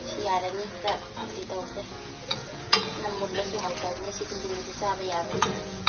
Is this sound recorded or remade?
remade